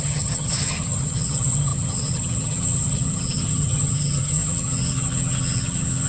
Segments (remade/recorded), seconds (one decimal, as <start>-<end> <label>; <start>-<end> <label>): 0.0-6.1 remade